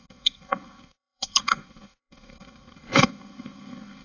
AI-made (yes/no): yes